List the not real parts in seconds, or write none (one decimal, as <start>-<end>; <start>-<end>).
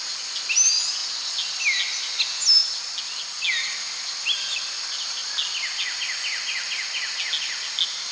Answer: none